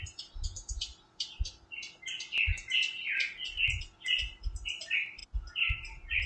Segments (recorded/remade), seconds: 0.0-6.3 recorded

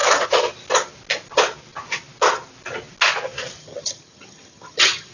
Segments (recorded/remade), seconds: 0.0-3.6 recorded; 3.6-5.1 remade

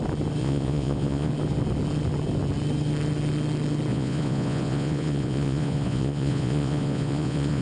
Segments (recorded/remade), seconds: 0.0-0.4 recorded; 0.4-1.3 remade; 1.3-3.9 recorded; 3.9-7.6 remade

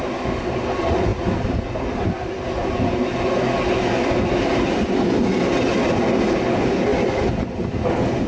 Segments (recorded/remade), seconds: 0.0-8.3 recorded

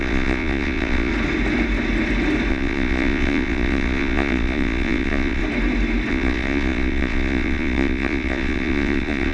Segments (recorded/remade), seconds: 0.0-1.1 remade; 1.1-2.5 recorded; 2.5-5.4 remade; 5.4-6.1 recorded; 6.1-9.3 remade